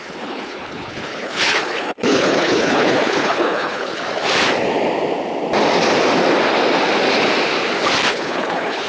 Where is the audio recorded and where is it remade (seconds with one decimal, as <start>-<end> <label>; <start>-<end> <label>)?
0.0-4.0 remade; 4.0-8.1 recorded; 8.1-8.9 remade